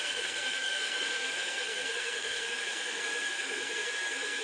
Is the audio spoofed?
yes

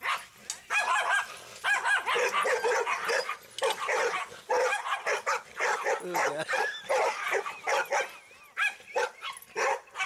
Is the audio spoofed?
no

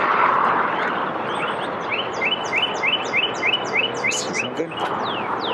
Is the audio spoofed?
no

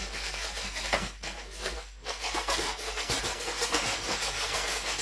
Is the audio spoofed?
yes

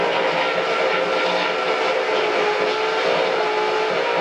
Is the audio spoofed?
no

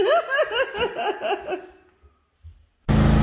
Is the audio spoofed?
no